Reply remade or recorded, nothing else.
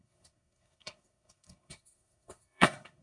remade